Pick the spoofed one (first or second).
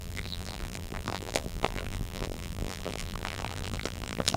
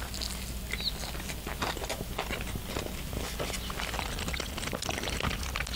first